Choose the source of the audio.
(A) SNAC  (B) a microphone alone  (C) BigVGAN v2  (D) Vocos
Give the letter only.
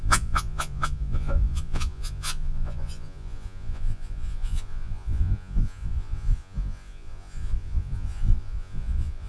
D